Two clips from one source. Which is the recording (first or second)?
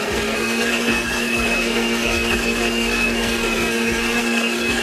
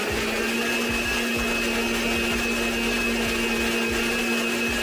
second